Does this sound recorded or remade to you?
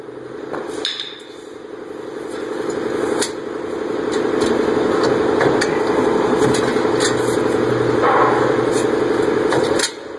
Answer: recorded